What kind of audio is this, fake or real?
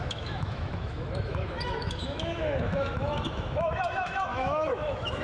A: fake